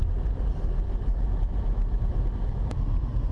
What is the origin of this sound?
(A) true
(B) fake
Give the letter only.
A